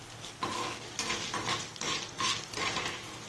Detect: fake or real real